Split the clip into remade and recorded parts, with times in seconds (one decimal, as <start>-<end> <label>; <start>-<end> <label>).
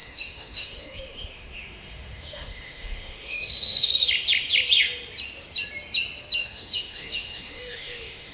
0.0-3.9 remade; 3.9-6.4 recorded; 6.4-8.3 remade